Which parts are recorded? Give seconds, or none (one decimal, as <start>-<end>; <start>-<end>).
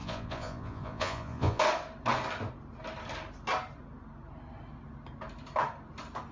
1.6-6.3